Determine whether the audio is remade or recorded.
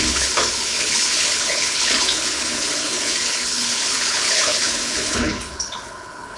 remade